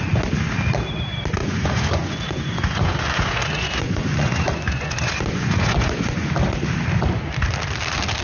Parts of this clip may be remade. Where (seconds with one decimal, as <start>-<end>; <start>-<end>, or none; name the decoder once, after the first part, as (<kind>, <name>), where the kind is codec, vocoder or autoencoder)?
1.4-6.3 (vocoder, Vocos)